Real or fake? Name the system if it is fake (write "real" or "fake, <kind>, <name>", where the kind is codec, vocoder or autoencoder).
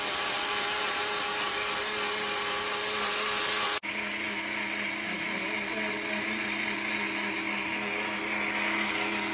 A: real